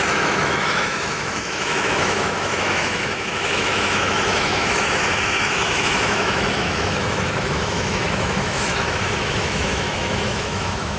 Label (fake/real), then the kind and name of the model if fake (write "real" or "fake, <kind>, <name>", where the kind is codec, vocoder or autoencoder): fake, autoencoder, DAC-VAE